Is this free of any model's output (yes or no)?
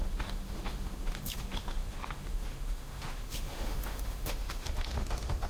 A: no